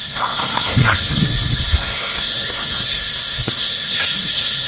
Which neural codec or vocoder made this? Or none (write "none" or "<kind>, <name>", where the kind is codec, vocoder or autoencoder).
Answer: codec, SNAC